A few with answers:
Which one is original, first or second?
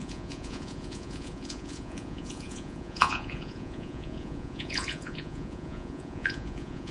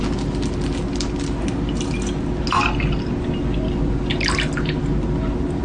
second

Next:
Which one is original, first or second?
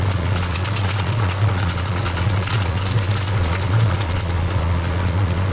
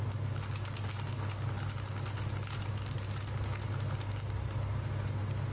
second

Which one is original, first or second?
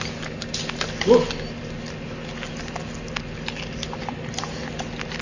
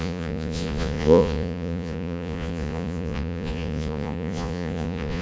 first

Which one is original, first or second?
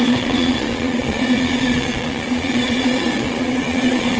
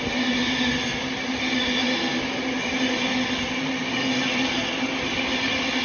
second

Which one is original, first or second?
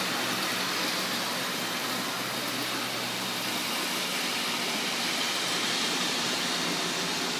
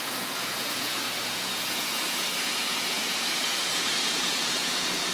first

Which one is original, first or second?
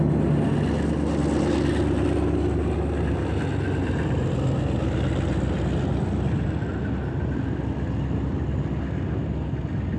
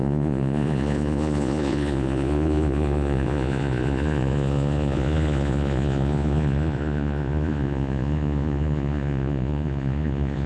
first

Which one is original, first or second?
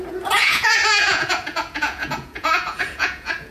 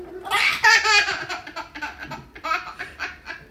second